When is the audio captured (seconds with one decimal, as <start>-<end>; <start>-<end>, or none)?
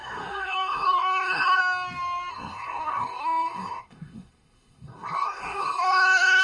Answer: 1.6-2.3